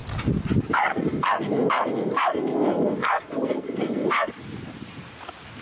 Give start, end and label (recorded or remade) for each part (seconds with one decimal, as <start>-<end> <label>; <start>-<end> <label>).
0.0-0.9 recorded; 0.9-4.3 remade; 4.3-5.6 recorded